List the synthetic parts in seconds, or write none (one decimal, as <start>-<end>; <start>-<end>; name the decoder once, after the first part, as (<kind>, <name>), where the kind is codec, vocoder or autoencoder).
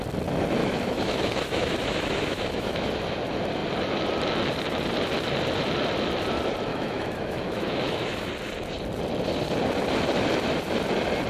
0.6-2.9 (autoencoder, DAC-VAE); 6.7-8.3